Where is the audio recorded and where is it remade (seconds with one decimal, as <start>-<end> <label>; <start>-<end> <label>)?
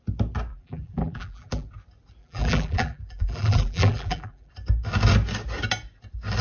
0.0-0.5 recorded; 0.5-1.7 remade; 1.7-2.2 recorded; 2.2-4.5 remade; 4.5-6.4 recorded